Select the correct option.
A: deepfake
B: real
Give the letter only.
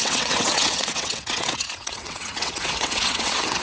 A